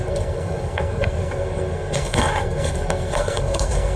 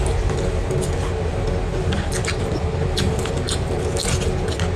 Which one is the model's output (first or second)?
first